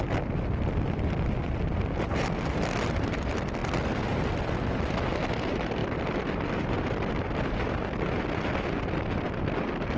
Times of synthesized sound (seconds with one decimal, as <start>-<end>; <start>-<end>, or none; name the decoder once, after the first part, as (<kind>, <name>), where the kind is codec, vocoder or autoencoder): none